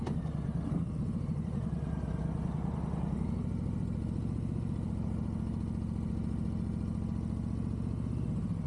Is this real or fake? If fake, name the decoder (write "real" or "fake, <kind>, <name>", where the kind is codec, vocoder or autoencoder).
real